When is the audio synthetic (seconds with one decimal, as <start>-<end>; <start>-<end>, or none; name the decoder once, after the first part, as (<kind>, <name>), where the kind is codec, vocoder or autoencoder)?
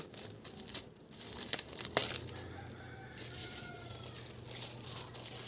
3.4-3.9 (vocoder, Vocos)